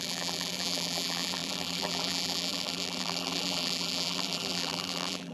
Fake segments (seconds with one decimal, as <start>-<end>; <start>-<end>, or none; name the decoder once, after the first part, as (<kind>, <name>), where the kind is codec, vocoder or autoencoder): 0.0-5.3 (vocoder, BigVGAN v2)